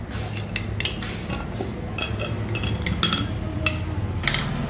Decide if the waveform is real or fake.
real